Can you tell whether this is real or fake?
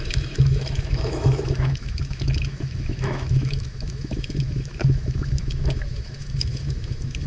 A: fake